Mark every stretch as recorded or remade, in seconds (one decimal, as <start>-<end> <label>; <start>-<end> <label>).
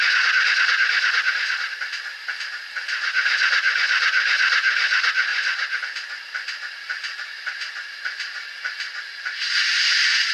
0.0-10.3 recorded